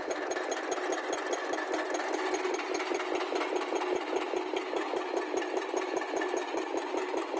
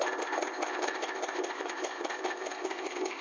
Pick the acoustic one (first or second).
first